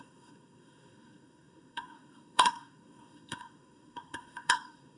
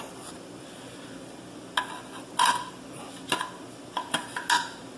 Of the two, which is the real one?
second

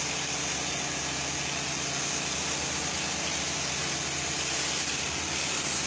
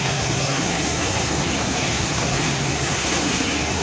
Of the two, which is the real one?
first